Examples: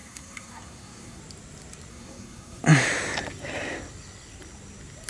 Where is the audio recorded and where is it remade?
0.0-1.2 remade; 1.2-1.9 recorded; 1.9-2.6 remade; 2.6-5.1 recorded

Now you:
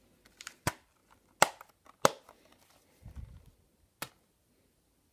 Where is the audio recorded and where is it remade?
0.0-5.1 recorded

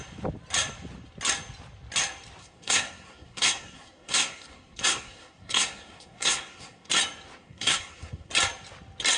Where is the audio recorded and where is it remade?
0.0-2.4 recorded; 2.4-6.9 remade; 6.9-7.4 recorded; 7.4-8.3 remade; 8.3-9.2 recorded

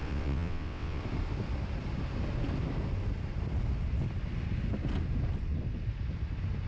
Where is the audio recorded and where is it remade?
0.0-1.0 remade; 1.0-6.7 recorded

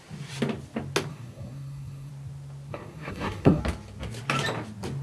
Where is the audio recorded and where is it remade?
0.0-1.1 recorded; 1.1-2.1 remade; 2.1-2.7 recorded; 2.7-3.6 remade; 3.6-5.0 recorded

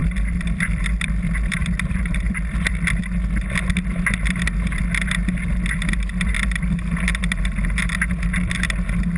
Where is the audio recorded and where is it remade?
0.0-3.0 remade; 3.0-9.2 recorded